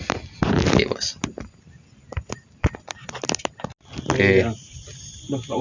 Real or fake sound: real